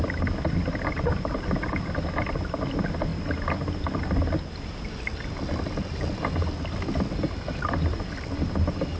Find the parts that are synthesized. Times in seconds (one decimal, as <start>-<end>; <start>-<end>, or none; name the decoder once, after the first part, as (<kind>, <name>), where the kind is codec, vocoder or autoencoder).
none

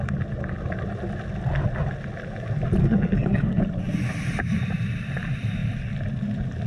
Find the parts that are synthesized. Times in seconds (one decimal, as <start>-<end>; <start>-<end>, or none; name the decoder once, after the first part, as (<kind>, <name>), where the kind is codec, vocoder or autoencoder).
2.8-3.6 (codec, SNAC)

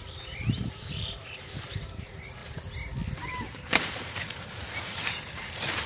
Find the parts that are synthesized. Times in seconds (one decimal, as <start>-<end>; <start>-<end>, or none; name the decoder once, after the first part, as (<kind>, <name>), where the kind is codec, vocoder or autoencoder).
0.0-2.4 (vocoder, BigVGAN v2); 3.3-5.9

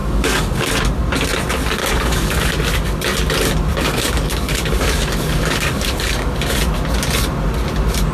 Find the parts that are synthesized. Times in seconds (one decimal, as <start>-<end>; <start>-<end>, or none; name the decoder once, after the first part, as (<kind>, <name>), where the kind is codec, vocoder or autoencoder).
0.0-0.7 (codec, DAC); 1.8-2.5; 3.7-6.6

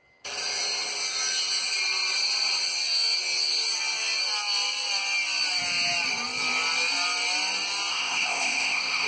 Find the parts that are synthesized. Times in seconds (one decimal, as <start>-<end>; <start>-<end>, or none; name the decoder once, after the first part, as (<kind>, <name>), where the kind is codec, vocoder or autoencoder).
7.9-9.1 (codec, ZipCodec)

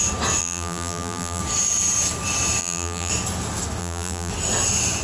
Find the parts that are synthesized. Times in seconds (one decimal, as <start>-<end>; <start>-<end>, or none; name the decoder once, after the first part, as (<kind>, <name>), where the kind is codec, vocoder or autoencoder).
0.4-1.4 (vocoder, BigVGAN v2); 2.6-3.1; 3.8-4.3